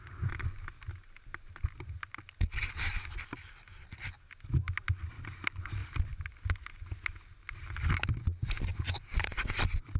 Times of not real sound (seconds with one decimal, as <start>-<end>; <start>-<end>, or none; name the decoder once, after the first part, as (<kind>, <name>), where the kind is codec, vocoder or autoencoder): 5.8-6.5 (vocoder, BigVGAN v2); 8.7-9.6

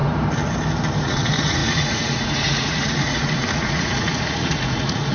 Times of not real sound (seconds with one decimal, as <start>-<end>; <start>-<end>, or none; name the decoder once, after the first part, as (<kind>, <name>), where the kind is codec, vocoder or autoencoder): 1.0-5.1 (vocoder, Vocos)

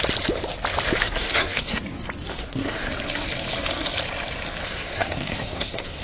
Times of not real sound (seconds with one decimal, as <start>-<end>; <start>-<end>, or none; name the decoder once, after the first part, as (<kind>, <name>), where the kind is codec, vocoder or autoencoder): 1.0-1.8 (codec, SNAC); 2.3-2.9; 4.6-6.0

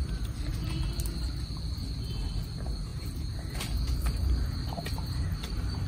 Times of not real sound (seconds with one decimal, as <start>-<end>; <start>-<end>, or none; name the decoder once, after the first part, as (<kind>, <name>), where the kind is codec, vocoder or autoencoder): 2.9-5.9 (vocoder, BigVGAN v2)